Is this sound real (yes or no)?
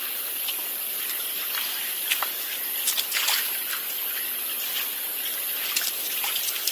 yes